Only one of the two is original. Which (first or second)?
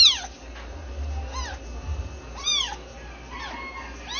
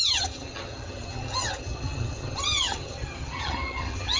first